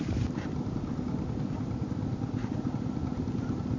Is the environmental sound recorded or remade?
recorded